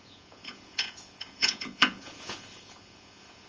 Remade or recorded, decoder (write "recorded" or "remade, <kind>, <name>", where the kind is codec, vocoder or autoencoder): remade, vocoder, Vocos